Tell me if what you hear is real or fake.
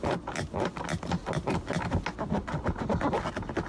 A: real